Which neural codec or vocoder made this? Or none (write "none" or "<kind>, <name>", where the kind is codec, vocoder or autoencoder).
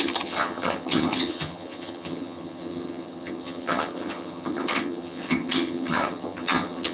vocoder, HiFi-GAN